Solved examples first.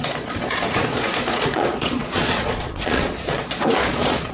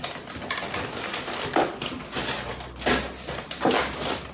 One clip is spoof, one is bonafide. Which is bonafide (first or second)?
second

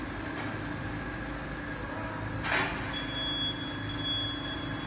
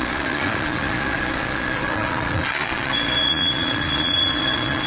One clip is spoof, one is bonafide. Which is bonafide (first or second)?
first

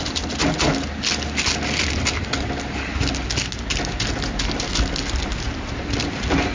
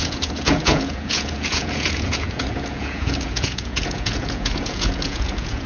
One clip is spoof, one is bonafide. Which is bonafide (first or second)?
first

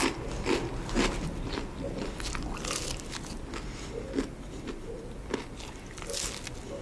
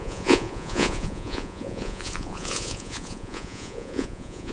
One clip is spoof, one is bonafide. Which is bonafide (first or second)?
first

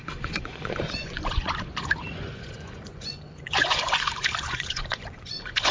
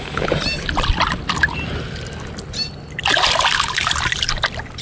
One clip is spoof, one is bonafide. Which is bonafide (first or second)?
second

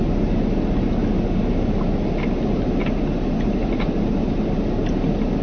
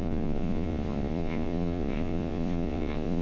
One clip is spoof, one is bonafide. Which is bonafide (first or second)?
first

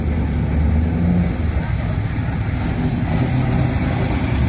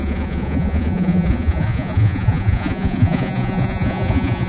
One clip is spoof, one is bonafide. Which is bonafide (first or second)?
first